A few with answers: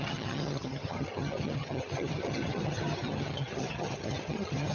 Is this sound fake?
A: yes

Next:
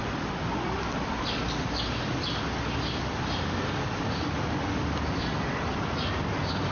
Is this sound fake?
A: no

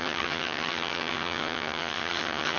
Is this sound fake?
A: yes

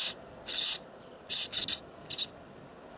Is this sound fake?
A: no